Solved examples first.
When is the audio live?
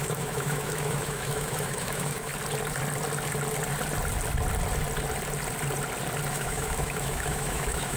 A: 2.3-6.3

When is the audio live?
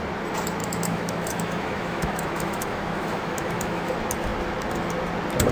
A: 0.0-0.6; 3.9-5.5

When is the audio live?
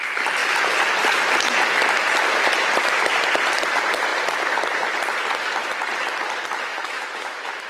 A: 0.0-6.7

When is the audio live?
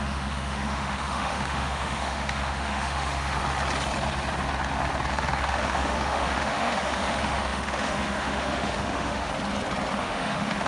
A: 3.4-5.1; 9.3-10.0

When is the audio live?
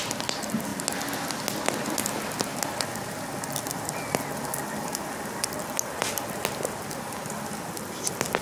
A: 0.0-8.4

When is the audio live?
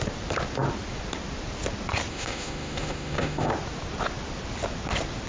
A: 0.0-2.1; 3.5-5.3